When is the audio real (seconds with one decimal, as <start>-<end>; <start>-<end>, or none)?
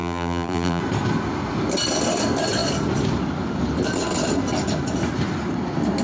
0.8-6.0